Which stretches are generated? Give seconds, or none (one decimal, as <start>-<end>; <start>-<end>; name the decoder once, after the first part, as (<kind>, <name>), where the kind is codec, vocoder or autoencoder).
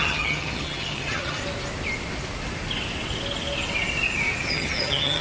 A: 0.0-1.4 (vocoder, HiFi-GAN); 4.5-5.2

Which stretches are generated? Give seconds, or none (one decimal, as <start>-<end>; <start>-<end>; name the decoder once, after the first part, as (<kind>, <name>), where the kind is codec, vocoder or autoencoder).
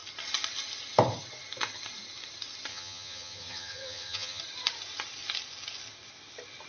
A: 2.7-4.4 (vocoder, HiFi-GAN)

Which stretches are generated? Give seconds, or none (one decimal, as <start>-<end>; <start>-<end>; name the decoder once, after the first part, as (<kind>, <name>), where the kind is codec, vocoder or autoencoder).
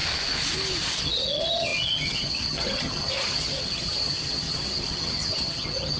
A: 1.0-6.0 (vocoder, HiFi-GAN)